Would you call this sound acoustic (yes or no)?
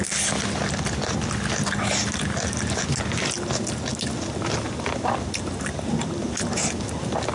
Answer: yes